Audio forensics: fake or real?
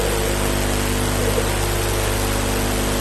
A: real